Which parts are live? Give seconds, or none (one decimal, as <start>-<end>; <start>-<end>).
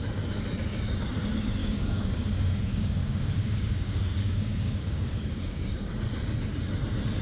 0.0-1.6; 5.9-7.2